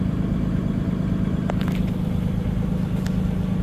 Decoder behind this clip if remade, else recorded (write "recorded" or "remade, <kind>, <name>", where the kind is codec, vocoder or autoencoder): recorded